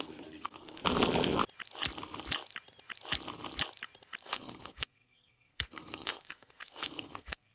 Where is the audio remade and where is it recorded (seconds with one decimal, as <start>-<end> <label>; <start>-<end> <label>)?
0.0-0.8 remade; 0.8-4.2 recorded; 4.2-7.5 remade